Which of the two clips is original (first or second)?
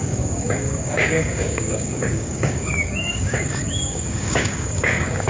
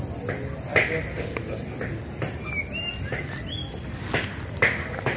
second